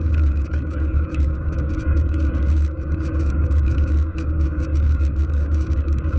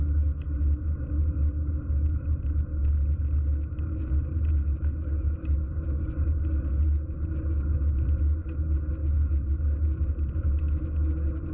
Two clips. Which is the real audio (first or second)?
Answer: second